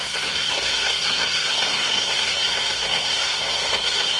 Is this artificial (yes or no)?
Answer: yes